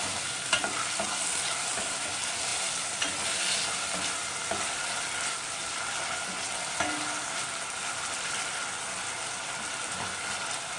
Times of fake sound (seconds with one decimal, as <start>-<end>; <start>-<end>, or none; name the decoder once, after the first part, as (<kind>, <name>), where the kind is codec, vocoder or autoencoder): none